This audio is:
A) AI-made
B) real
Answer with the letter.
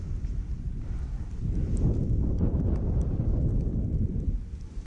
A